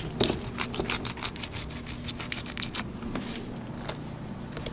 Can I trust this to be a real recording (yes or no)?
yes